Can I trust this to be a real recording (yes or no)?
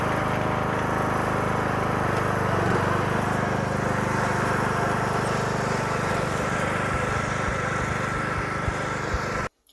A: yes